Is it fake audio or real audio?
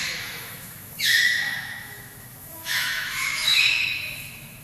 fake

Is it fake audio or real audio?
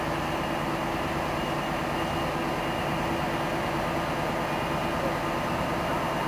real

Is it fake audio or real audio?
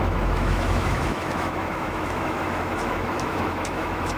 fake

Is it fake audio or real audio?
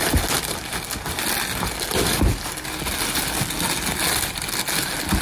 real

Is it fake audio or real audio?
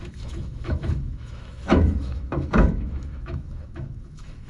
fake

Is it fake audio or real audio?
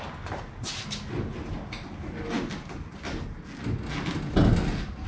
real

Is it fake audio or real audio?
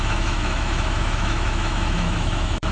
fake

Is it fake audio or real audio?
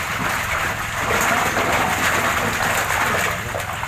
real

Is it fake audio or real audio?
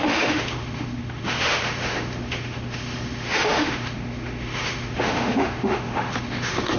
fake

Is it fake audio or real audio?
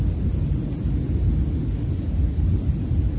real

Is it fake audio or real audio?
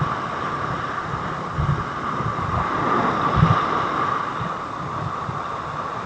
real